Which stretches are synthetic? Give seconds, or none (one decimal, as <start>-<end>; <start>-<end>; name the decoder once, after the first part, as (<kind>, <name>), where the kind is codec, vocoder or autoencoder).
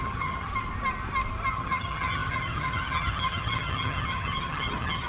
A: 0.0-0.5 (vocoder, HiFi-GAN); 1.5-5.1